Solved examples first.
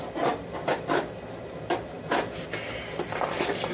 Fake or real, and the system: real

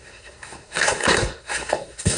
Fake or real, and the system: fake, codec, SNAC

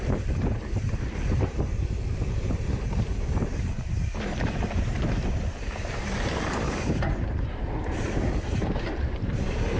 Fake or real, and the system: fake, vocoder, BigVGAN v2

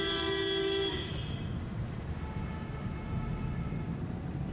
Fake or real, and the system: real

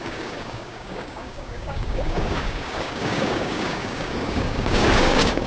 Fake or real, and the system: fake, codec, DAC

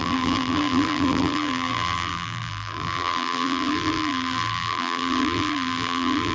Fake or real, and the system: fake, vocoder, BigVGAN v2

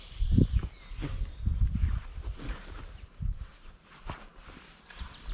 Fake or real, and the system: real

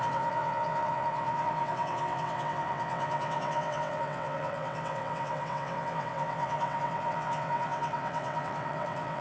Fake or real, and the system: fake, vocoder, WaveNeXt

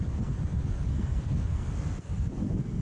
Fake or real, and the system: fake, codec, SNAC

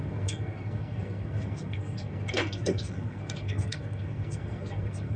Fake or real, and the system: fake, codec, SNAC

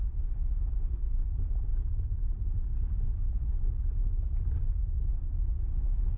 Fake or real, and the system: real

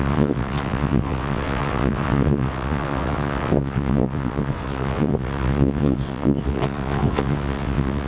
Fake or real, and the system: fake, vocoder, WaveNeXt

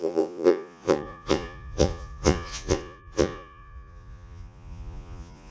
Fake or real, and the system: fake, vocoder, Vocos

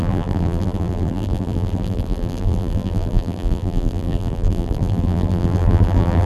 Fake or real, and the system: fake, vocoder, BigVGAN v2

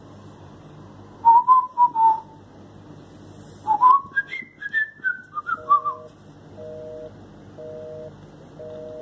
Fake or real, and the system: real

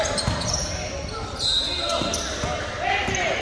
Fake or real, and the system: real